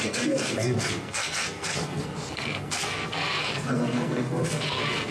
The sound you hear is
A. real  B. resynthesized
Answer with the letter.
B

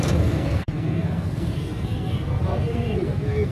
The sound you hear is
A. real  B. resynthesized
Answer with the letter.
B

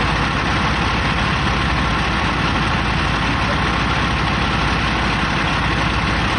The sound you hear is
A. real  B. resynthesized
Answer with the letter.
A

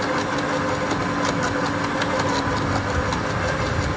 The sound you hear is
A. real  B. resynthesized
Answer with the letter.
A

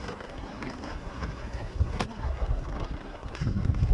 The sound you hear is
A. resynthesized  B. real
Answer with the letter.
A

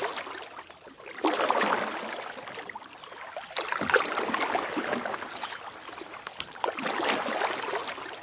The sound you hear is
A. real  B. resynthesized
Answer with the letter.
A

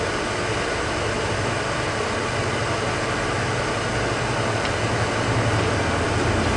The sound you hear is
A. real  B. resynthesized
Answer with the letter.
A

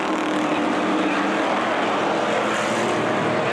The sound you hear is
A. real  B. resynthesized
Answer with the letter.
A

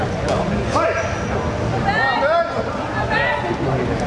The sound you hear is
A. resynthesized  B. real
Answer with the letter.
B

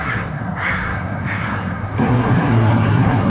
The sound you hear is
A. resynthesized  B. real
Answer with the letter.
A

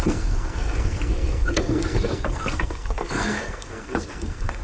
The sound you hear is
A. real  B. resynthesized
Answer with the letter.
B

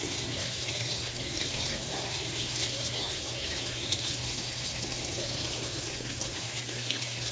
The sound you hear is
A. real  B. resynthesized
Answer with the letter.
B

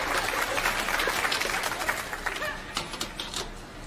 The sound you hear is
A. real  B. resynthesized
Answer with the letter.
A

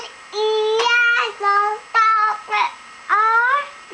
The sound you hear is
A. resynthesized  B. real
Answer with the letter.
B